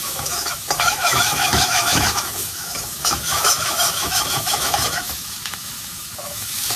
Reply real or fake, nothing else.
fake